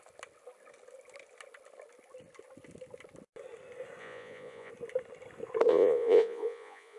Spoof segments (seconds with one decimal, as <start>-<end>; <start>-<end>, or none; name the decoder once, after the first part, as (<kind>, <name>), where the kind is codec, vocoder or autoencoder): 4.0-4.7 (vocoder, Vocos); 5.7-7.0